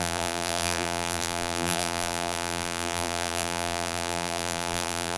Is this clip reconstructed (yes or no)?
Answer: yes